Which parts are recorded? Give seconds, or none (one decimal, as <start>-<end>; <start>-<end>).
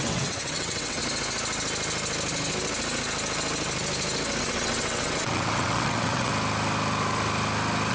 1.0-4.4; 6.3-7.9